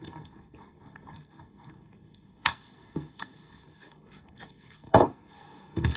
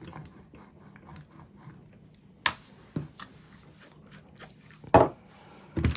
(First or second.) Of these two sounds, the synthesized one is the first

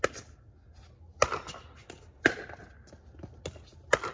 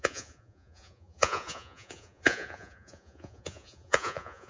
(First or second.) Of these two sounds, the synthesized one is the second